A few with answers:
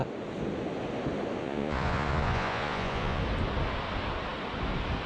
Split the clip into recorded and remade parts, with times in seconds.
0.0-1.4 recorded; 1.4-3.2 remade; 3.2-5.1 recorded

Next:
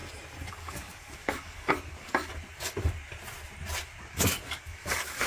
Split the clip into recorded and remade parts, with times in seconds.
0.0-0.5 recorded; 0.5-2.3 remade; 2.3-4.0 recorded; 4.0-5.3 remade

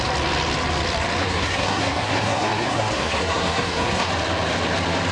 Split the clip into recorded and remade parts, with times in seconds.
0.0-1.2 recorded; 1.2-4.1 remade; 4.1-5.1 recorded

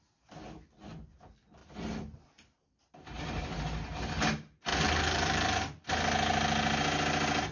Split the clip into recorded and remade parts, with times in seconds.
0.0-1.6 recorded; 1.6-4.1 remade; 4.1-4.7 recorded; 4.7-5.9 remade; 5.9-7.5 recorded

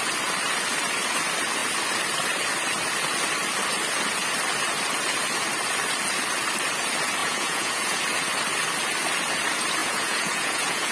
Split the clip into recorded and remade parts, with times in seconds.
0.0-7.2 recorded; 7.2-8.0 remade; 8.0-9.8 recorded; 9.8-10.9 remade

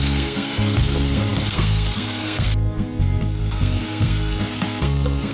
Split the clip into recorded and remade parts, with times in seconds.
0.0-5.3 remade